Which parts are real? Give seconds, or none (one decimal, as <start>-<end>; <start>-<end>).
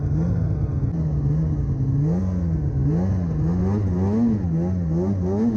0.0-5.6